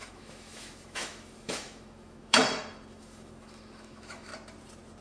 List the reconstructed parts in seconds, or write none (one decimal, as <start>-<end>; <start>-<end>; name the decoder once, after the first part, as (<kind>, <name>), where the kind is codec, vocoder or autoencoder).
0.0-2.4 (autoencoder, DAC-VAE); 2.9-4.3

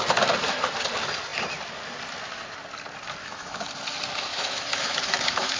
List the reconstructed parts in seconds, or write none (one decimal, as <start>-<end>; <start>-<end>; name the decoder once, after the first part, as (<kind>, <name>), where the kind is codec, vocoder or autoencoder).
3.2-3.7 (autoencoder, DAC-VAE); 4.3-5.6

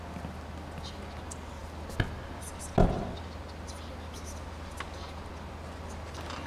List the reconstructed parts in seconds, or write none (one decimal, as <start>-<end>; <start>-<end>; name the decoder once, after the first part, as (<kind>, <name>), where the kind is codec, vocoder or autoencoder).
none